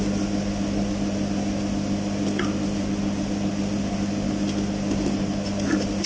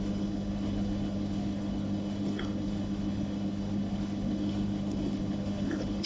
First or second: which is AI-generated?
second